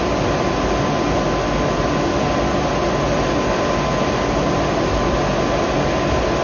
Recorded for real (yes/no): yes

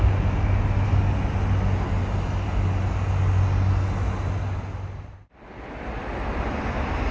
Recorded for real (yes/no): yes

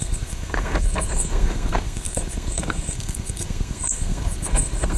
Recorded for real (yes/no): no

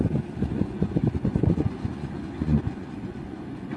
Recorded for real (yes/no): no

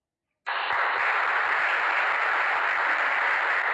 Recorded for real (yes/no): yes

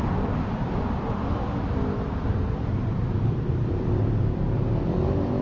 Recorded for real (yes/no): no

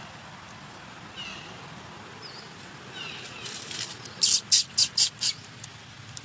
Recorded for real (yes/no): yes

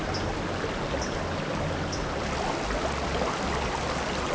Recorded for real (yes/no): yes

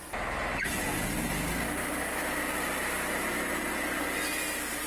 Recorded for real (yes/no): yes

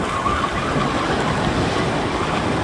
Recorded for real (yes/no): yes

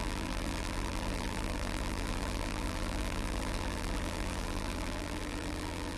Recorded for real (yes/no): no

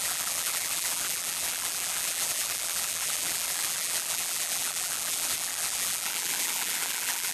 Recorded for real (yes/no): no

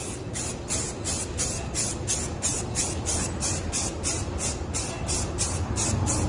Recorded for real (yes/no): yes